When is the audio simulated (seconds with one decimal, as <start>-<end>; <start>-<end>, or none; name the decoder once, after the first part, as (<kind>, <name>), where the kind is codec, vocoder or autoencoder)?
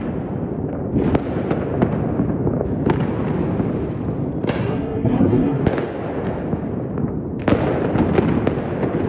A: 4.6-5.6 (codec, SNAC)